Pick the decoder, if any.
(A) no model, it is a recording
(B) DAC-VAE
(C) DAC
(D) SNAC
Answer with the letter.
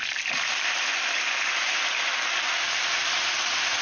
A